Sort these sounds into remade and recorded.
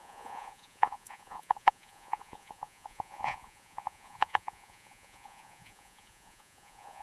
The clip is remade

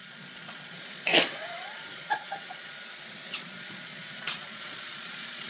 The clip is remade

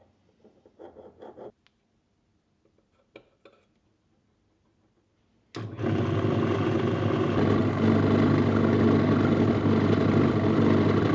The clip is recorded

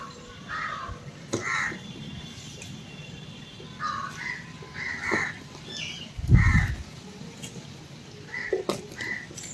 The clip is recorded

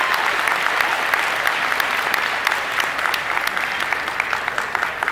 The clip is recorded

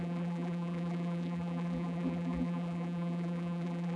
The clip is remade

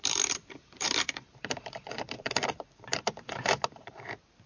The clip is remade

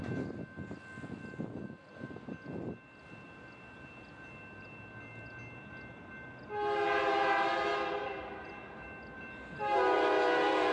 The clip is recorded